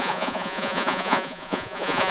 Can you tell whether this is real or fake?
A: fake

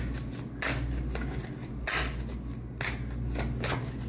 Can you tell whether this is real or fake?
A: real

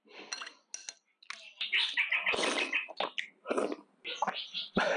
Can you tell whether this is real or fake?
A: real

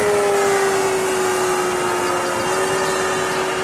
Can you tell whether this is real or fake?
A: real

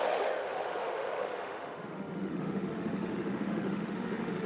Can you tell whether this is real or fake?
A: fake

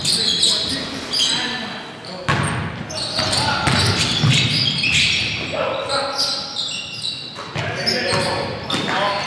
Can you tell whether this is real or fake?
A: real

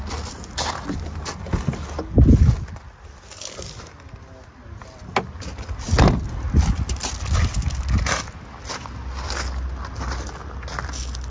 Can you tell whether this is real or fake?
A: real